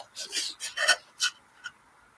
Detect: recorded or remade recorded